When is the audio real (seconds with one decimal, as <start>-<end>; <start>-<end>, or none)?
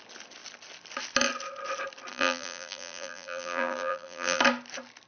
0.0-2.1; 4.4-5.1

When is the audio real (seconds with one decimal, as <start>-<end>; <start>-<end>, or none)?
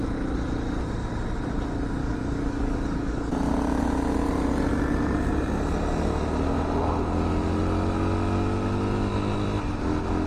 0.0-2.0; 3.3-10.3